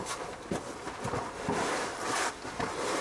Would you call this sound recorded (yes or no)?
yes